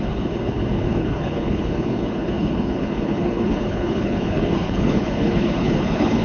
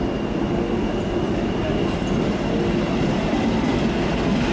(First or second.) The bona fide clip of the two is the second